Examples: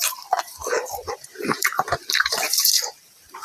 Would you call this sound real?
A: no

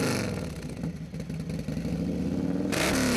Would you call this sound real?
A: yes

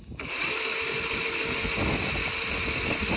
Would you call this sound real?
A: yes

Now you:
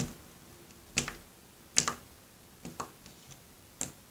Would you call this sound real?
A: yes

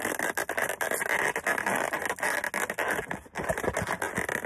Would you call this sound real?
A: yes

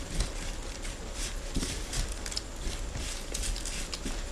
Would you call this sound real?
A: yes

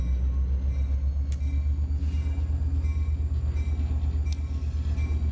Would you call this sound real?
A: yes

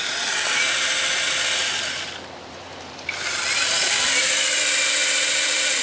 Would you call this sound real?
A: no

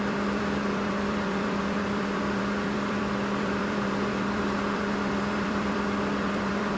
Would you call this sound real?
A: no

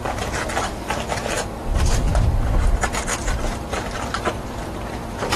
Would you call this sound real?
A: no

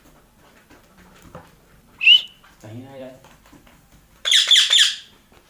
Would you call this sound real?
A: no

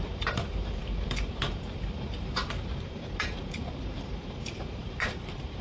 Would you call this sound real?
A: no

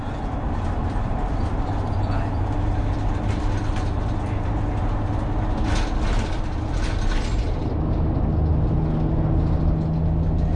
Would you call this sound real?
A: yes